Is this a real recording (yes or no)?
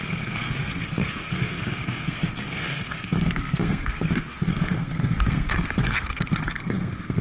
no